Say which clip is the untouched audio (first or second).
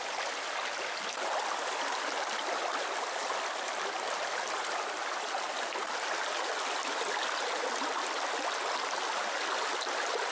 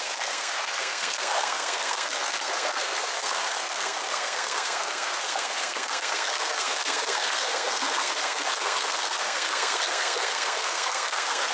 first